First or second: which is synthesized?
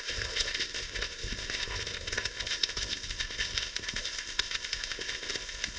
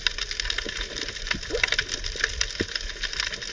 first